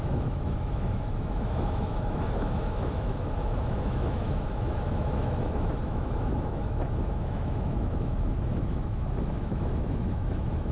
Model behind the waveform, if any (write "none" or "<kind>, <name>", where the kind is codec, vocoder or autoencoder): autoencoder, DAC-VAE